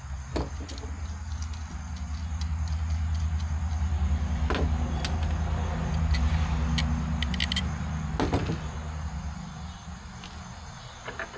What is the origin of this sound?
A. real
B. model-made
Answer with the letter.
A